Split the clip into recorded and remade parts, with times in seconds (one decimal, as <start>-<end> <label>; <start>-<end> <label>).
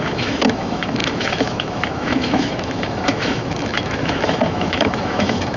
0.0-5.6 remade